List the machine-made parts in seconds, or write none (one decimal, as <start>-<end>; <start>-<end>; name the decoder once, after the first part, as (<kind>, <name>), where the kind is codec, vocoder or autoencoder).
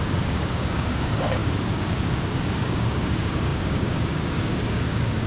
0.0-5.3 (codec, DAC)